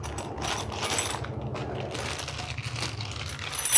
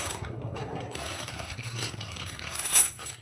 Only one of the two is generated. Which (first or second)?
second